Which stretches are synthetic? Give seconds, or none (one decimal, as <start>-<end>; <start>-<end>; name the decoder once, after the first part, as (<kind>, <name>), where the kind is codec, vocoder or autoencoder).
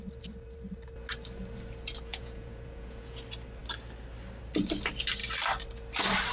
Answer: 2.1-3.2 (vocoder, Vocos)